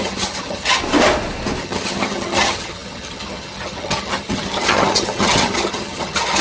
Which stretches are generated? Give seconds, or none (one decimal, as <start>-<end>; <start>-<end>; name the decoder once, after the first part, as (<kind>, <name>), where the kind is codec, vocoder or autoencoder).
0.0-0.8 (vocoder, HiFi-GAN); 1.6-6.4